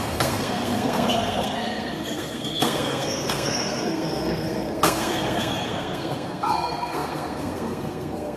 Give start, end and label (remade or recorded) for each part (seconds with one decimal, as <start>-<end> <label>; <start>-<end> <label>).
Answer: 0.0-8.4 remade